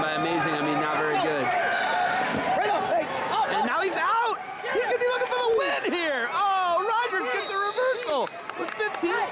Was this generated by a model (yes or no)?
no